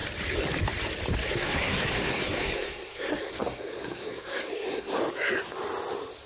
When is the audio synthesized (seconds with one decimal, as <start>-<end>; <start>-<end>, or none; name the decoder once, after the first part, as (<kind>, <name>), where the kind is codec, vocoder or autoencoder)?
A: 1.2-5.0 (codec, SNAC)